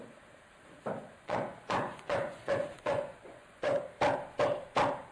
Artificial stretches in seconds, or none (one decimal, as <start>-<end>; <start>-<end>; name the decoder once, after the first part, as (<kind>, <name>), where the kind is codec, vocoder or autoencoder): 1.0-3.8 (vocoder, Vocos)